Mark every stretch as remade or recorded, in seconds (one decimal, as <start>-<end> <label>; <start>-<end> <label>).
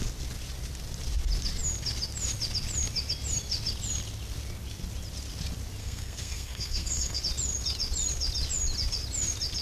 0.0-5.8 recorded; 5.8-7.2 remade; 7.2-9.6 recorded